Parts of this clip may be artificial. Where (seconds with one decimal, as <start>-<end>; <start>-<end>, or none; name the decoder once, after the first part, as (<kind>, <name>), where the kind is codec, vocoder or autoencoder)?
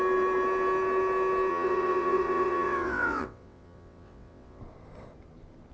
1.5-4.6 (vocoder, WaveNeXt)